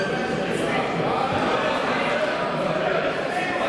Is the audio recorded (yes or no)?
no